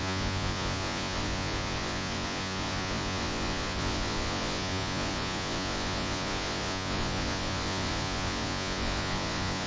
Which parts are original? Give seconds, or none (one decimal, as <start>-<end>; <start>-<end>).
none